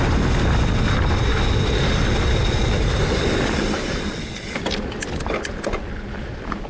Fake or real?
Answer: real